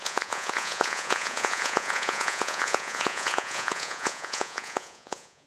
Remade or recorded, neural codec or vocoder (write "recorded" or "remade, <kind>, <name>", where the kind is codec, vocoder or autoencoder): remade, vocoder, Vocos